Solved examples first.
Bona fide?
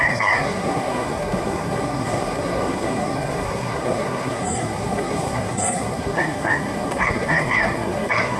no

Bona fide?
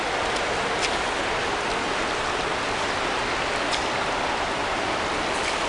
yes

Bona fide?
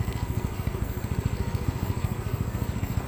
no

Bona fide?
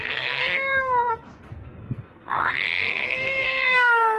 no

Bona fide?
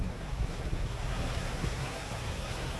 no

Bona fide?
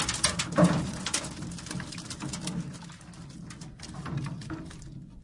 yes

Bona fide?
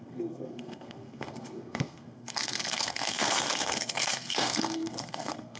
no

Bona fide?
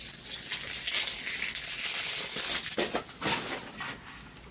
yes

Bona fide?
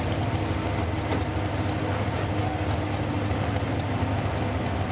yes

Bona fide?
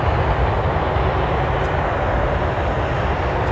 yes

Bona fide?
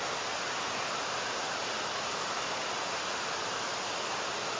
yes